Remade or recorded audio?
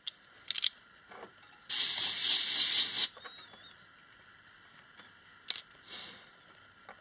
recorded